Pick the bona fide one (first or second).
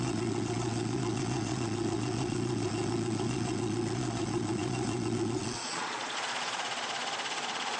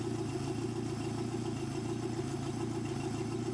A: second